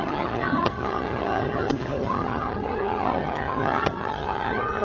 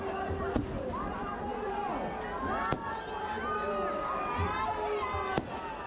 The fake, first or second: first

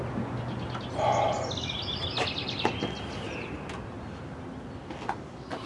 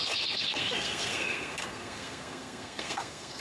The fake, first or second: second